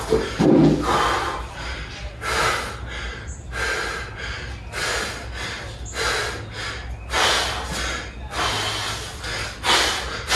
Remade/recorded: recorded